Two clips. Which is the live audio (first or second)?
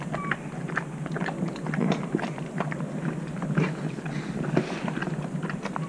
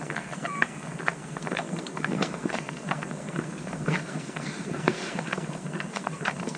first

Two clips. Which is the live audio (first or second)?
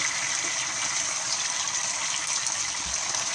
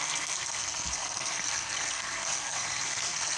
first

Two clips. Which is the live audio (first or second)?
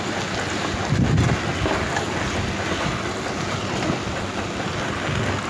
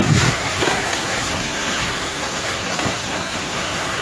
first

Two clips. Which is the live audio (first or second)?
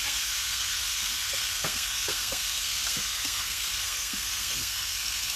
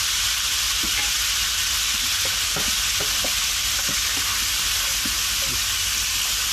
second